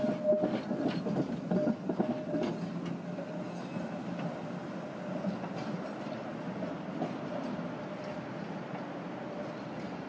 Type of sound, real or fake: real